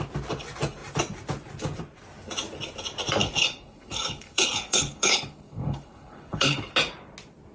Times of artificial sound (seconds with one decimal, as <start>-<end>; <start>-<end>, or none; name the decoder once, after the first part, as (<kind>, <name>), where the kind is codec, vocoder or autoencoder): 3.2-6.6 (codec, HILCodec)